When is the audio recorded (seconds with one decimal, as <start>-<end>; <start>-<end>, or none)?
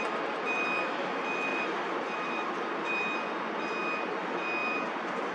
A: 0.0-1.5; 2.9-4.6